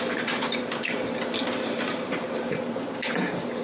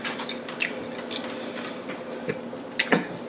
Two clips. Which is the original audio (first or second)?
second